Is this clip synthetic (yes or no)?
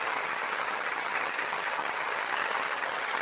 yes